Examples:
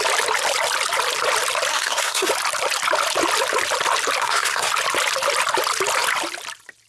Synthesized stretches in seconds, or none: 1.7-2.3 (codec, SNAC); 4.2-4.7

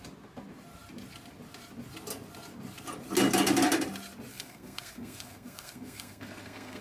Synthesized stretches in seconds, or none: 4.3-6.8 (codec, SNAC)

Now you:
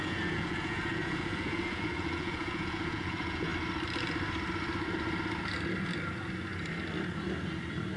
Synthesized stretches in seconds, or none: 0.0-3.5 (vocoder, Vocos)

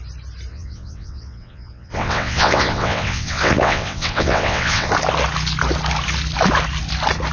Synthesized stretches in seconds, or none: 0.5-4.9 (vocoder, WaveNeXt)

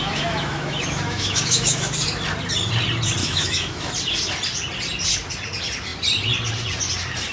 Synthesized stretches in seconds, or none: 0.0-1.9 (autoencoder, DAC-VAE); 3.2-3.9

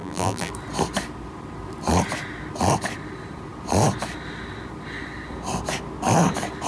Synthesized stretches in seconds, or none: 0.0-0.5 (vocoder, BigVGAN v2)